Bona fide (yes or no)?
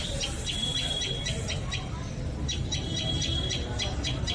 yes